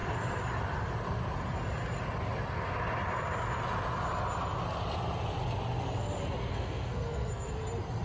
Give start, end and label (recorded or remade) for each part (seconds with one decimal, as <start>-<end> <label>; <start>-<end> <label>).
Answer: 0.0-6.5 recorded; 6.5-7.5 remade; 7.5-8.0 recorded